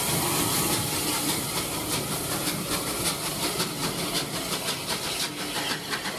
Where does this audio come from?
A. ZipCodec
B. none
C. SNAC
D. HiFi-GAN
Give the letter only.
B